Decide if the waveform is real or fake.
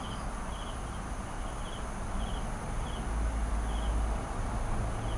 real